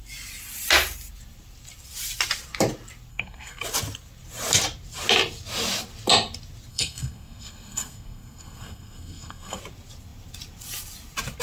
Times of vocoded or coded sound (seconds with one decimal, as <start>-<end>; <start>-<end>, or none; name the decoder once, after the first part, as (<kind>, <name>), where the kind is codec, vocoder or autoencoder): 3.1-3.6 (codec, SNAC); 6.7-9.6